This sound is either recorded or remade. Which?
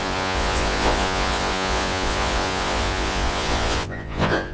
remade